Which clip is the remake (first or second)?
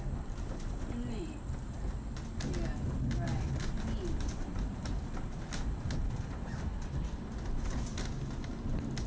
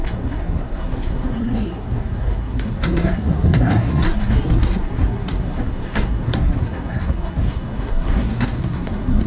second